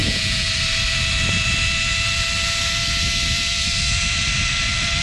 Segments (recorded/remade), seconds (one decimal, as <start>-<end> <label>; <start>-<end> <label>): 0.0-0.5 remade; 0.5-5.0 recorded